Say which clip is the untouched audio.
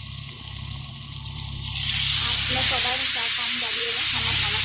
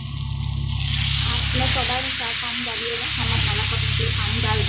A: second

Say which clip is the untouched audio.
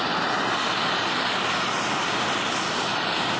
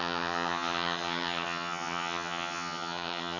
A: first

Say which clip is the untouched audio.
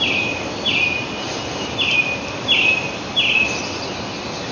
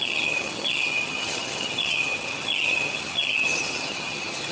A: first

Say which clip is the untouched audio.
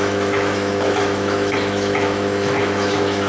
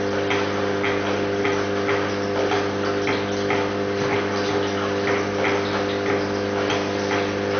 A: second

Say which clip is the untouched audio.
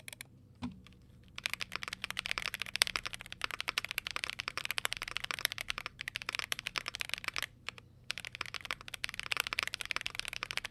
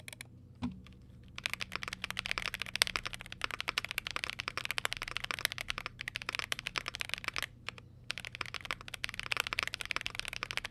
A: second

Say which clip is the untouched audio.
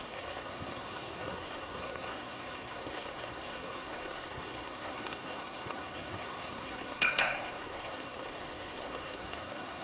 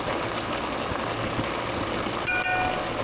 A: second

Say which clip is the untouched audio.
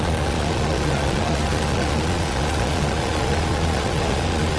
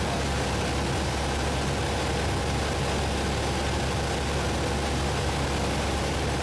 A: second